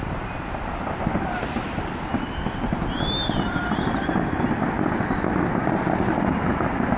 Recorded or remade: recorded